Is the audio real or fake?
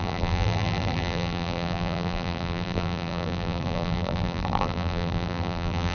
fake